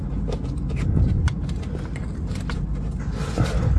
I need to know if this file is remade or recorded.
recorded